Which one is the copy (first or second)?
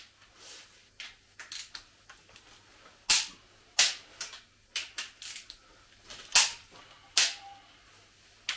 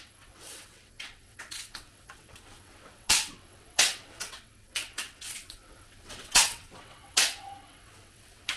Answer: second